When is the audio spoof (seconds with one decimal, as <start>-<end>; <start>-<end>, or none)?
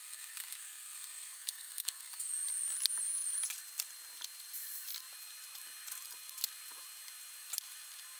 0.0-2.3